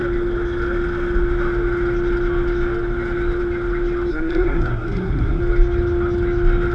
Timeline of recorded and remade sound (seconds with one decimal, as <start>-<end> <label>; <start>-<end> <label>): 0.0-4.1 recorded; 4.1-5.4 remade; 5.4-6.7 recorded